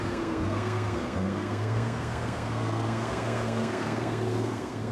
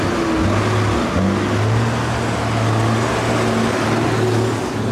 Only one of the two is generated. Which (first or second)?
first